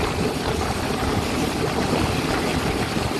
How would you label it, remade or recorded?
recorded